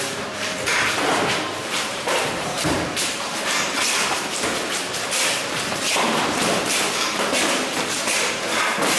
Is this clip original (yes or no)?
no